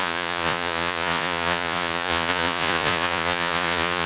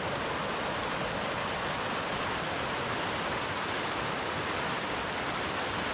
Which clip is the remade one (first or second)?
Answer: first